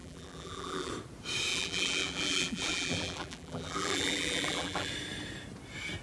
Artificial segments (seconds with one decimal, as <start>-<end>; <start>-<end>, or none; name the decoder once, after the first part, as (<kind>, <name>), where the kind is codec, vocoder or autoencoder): 0.0-0.9 (vocoder, BigVGAN v2); 1.5-4.9